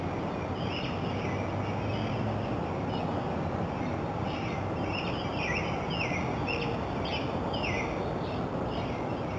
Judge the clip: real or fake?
real